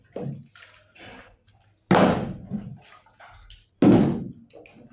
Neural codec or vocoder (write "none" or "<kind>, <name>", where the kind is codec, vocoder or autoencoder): none